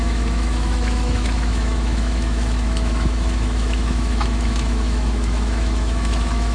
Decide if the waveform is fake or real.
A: fake